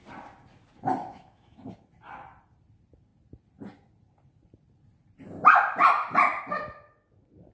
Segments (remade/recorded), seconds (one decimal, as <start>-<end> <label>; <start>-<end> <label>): 0.0-1.0 recorded; 1.0-1.7 remade; 1.7-7.5 recorded